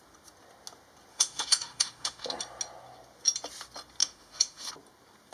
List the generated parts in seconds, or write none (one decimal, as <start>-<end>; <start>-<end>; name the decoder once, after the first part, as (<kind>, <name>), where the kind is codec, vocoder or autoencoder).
1.1-2.3 (autoencoder, DAC-VAE); 4.0-4.7